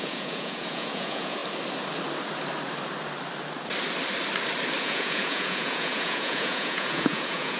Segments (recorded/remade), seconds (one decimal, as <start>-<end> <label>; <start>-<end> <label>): 0.0-1.4 remade; 1.4-4.8 recorded; 4.8-7.6 remade